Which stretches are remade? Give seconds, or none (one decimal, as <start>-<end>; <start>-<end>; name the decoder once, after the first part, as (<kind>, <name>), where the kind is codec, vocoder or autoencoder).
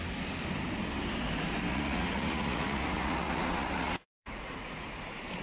1.7-4.9 (vocoder, Vocos)